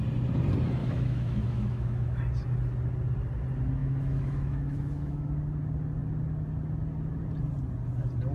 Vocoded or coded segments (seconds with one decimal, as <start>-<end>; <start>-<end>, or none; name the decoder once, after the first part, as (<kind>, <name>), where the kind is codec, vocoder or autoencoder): 0.8-2.2 (autoencoder, DAC-VAE); 3.8-5.3